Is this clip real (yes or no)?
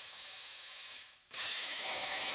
no